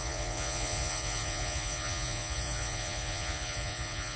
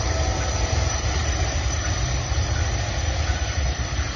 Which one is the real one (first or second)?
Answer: second